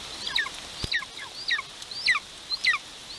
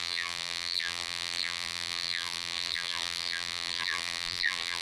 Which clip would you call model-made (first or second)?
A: second